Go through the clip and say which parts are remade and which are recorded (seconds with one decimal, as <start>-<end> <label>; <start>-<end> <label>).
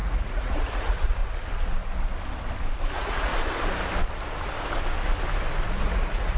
0.0-1.2 remade; 1.2-2.9 recorded; 2.9-3.3 remade; 3.3-5.7 recorded; 5.7-6.4 remade